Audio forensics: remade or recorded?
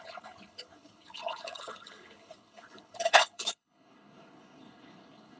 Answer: remade